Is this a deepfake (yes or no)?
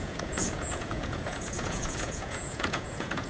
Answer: yes